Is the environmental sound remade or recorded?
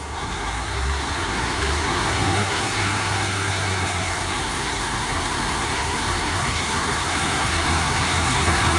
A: remade